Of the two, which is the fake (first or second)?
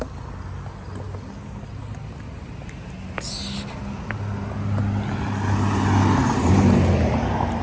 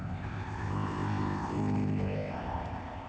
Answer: second